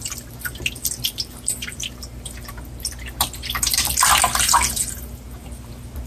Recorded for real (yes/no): no